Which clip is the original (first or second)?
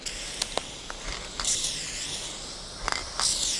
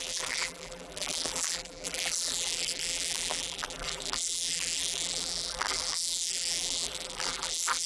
first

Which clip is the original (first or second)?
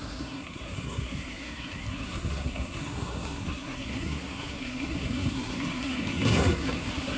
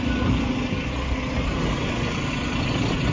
second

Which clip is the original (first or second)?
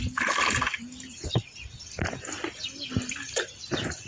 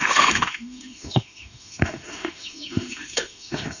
first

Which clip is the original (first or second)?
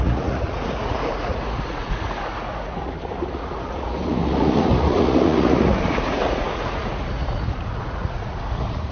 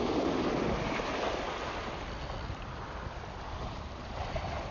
second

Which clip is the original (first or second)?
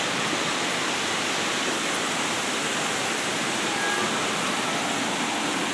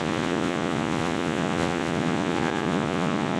first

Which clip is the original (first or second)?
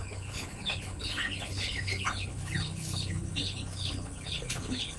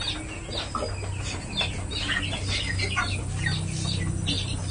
second